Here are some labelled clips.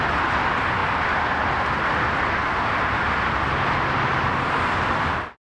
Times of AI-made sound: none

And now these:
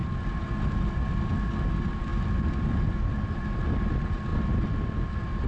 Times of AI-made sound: none